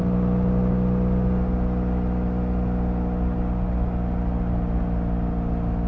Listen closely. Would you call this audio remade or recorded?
recorded